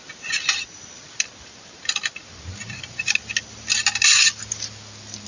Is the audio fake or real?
real